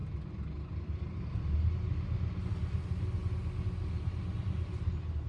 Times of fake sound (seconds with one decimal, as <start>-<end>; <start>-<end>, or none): none